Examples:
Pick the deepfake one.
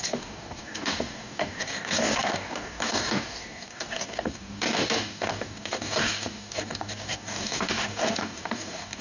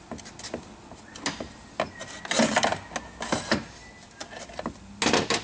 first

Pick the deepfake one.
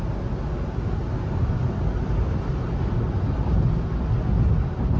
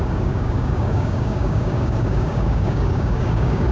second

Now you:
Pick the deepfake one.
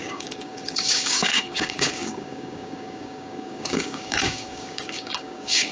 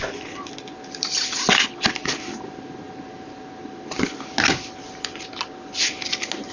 first